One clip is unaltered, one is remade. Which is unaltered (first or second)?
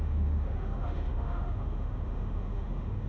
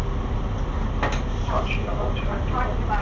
second